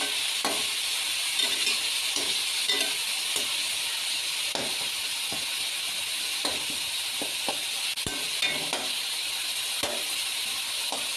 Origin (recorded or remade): recorded